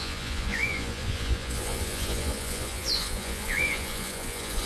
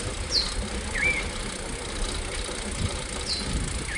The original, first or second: second